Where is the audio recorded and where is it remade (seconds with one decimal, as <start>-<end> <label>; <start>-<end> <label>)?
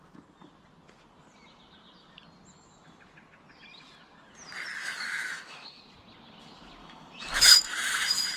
0.0-4.8 recorded; 4.8-5.8 remade; 5.8-6.8 recorded; 6.8-8.4 remade